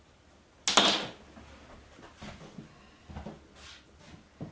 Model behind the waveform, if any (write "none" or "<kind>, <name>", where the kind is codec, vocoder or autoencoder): none